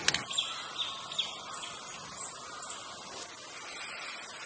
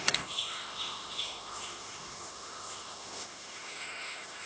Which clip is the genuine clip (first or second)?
first